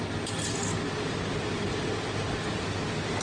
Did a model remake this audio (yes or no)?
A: no